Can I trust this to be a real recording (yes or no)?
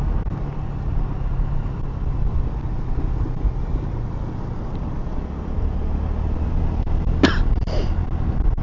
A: yes